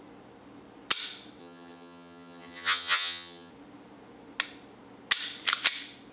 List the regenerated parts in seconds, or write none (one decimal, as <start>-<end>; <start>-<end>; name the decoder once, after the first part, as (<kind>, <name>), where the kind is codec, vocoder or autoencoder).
1.4-3.5 (vocoder, HiFi-GAN)